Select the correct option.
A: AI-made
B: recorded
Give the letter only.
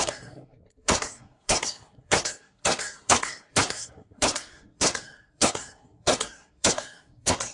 A